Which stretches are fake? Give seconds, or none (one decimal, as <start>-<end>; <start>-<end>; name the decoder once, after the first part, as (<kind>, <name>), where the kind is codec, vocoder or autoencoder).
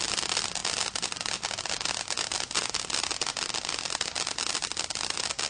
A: none